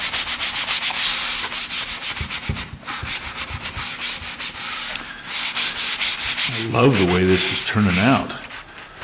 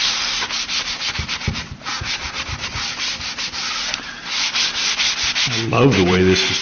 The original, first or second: first